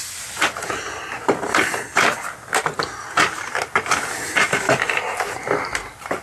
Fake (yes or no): no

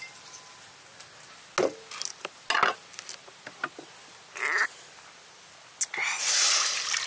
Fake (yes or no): no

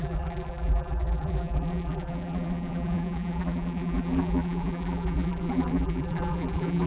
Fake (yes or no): yes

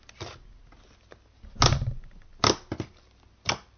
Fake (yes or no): no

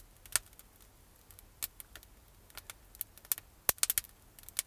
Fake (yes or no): no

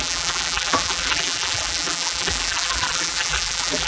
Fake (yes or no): yes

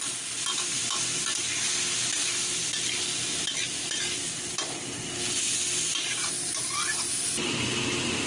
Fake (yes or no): no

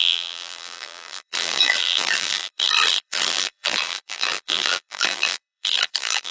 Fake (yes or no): yes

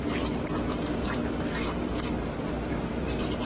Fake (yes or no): yes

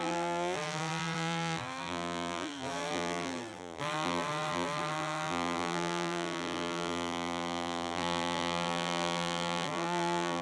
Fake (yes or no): yes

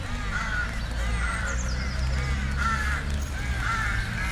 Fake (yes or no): no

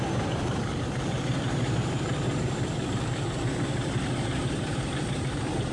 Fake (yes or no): yes